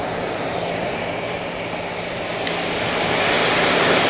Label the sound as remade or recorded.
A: recorded